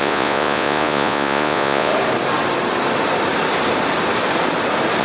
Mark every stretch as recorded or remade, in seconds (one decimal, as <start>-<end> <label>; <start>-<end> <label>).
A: 0.0-1.9 remade; 1.9-5.0 recorded